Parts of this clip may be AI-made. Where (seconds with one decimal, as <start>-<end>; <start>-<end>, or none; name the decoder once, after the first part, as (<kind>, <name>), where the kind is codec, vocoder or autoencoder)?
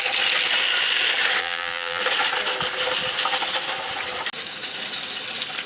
1.4-2.0 (vocoder, BigVGAN v2)